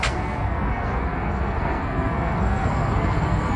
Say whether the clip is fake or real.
fake